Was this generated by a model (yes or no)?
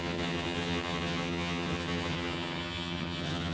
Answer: yes